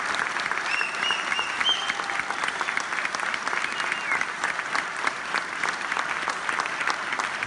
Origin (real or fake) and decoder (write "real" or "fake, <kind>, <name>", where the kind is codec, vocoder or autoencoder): real